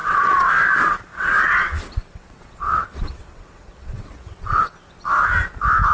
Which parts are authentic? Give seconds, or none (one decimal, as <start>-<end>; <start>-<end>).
0.5-1.1; 4.6-5.9